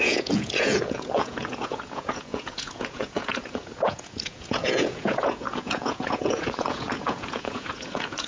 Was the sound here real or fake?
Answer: fake